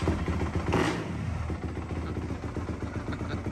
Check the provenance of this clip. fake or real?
real